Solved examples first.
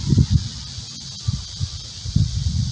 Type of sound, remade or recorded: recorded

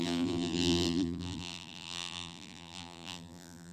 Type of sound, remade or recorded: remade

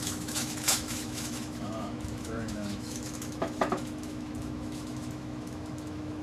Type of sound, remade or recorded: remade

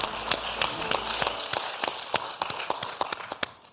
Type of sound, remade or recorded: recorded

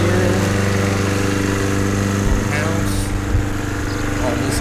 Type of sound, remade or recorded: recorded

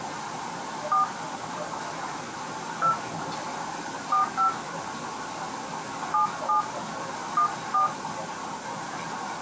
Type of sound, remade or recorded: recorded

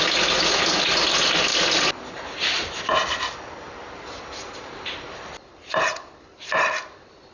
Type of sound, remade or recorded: recorded